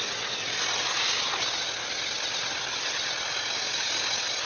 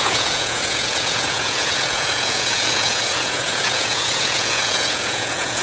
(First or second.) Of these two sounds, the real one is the first